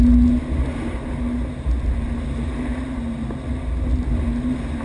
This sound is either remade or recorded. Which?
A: recorded